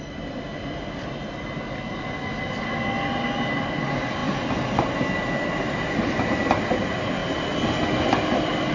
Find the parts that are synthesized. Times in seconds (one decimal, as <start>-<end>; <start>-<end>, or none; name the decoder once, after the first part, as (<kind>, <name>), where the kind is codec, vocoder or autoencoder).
none